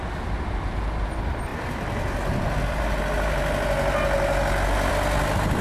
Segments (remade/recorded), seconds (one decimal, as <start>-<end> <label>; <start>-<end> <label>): 0.0-5.6 recorded